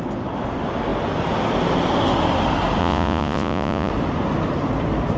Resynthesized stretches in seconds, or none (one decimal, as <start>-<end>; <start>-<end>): 2.8-3.9